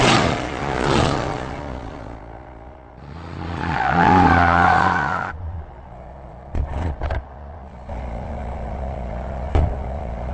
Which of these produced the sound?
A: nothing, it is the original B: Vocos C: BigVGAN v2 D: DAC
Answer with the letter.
B